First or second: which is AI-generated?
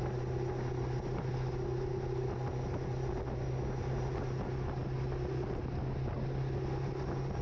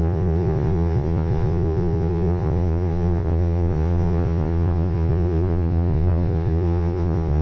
second